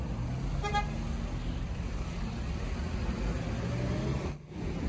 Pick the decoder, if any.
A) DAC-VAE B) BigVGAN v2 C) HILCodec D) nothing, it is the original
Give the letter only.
D